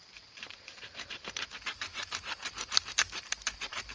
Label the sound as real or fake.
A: fake